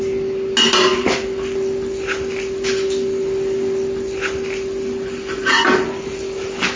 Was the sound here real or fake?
real